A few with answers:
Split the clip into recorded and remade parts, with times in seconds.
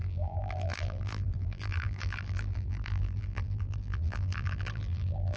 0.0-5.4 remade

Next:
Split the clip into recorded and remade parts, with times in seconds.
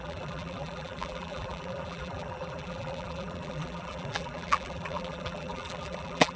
0.0-6.4 remade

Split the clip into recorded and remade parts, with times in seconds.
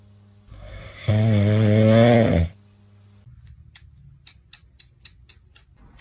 0.0-0.5 recorded; 0.5-1.1 remade; 1.1-6.0 recorded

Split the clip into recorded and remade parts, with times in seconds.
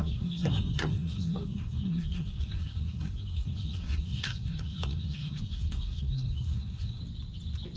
0.0-7.0 remade; 7.0-7.8 recorded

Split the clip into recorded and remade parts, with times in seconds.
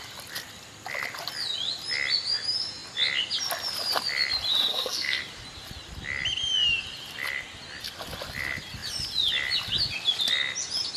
0.0-4.7 recorded; 4.7-5.2 remade; 5.2-11.0 recorded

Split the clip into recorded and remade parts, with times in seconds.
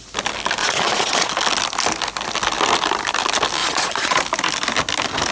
0.0-0.6 recorded; 0.6-1.3 remade; 1.3-3.6 recorded; 3.6-4.2 remade; 4.2-5.3 recorded